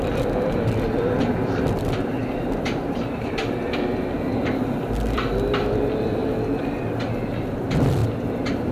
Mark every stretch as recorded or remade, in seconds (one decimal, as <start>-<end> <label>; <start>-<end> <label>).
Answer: 0.0-6.2 remade; 6.2-7.3 recorded; 7.3-8.7 remade